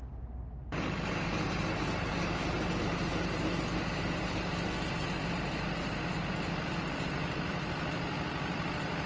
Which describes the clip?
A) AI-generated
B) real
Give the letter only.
B